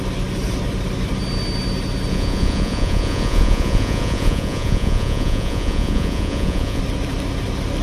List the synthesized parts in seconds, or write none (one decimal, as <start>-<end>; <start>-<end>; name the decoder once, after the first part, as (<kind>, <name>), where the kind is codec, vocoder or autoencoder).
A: 2.1-6.8 (vocoder, Vocos)